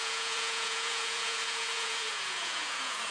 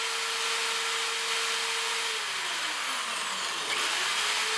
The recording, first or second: second